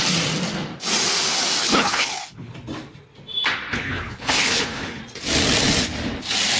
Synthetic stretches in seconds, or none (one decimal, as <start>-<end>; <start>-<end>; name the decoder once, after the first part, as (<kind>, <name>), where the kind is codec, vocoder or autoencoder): 1.6-2.5 (codec, HILCodec); 3.7-5.0